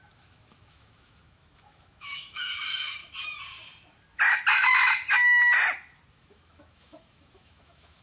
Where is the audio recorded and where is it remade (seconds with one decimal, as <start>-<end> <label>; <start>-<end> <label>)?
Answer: 0.0-3.0 remade; 3.0-6.1 recorded; 6.1-8.0 remade